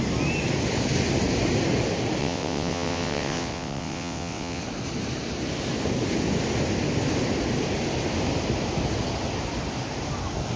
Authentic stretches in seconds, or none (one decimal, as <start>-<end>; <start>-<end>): 0.0-2.2; 4.6-10.6